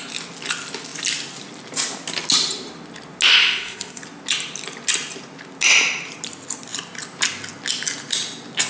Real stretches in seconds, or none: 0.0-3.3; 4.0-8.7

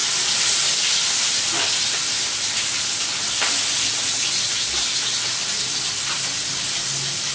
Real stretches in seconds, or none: 0.0-7.3

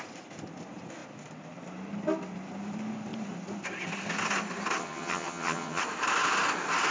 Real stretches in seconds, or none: 0.0-4.8; 5.8-6.9

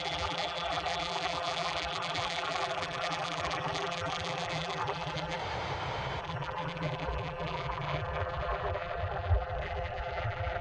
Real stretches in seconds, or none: 5.4-6.2

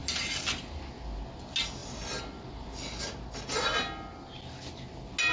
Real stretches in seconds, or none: 0.0-5.3

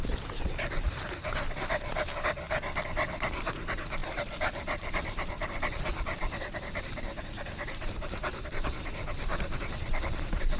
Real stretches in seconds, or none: 0.0-4.0; 8.4-9.3; 10.2-10.6